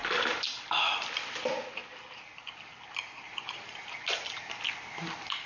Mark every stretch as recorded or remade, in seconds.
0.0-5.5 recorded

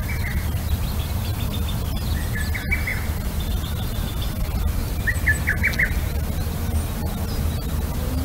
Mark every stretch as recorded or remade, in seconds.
0.0-8.2 recorded

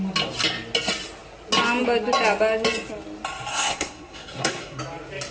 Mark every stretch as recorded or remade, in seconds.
0.0-3.5 recorded; 3.5-4.8 remade; 4.8-5.3 recorded

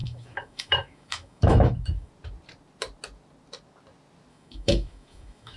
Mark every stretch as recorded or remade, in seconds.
0.0-2.1 remade; 2.1-4.3 recorded; 4.3-5.6 remade

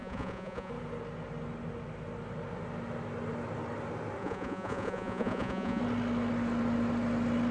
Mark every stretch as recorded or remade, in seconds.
0.0-0.7 remade; 0.7-4.2 recorded; 4.2-5.8 remade; 5.8-7.5 recorded

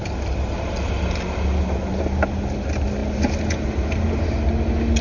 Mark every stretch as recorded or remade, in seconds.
0.0-5.0 recorded

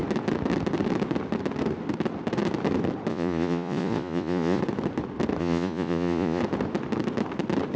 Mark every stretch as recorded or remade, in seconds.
0.0-3.1 recorded; 3.1-4.6 remade; 4.6-5.4 recorded; 5.4-6.4 remade; 6.4-7.8 recorded

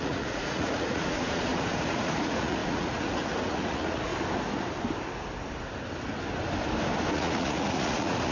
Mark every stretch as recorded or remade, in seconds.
0.0-4.1 remade; 4.1-7.1 recorded; 7.1-8.3 remade